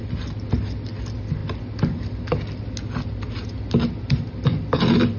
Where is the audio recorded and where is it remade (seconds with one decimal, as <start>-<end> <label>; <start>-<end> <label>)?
0.0-5.2 recorded